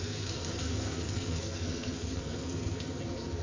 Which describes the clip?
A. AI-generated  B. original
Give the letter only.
A